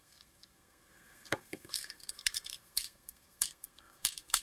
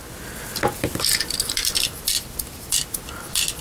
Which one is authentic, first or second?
second